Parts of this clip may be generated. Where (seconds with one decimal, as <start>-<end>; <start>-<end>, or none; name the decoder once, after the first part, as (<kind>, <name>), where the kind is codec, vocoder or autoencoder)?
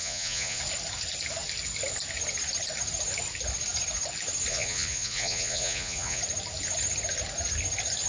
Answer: 0.0-0.6 (vocoder, Vocos); 4.5-6.2